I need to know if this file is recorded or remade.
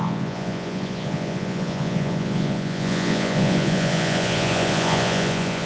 remade